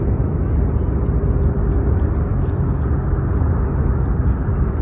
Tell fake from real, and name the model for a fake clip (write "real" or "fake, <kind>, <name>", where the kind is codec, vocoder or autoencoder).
real